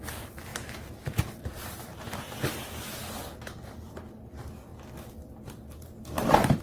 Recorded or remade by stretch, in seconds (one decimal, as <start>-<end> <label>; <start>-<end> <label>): 0.0-0.5 recorded; 0.5-2.2 remade; 2.2-6.6 recorded